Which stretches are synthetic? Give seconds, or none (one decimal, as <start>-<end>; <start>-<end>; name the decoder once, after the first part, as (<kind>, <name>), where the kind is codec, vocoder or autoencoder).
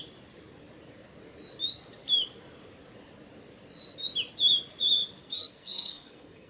5.2-6.5 (codec, SNAC)